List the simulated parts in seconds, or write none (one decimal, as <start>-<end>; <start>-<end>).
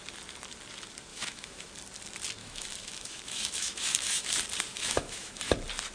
1.1-1.7; 2.4-4.3; 4.7-5.5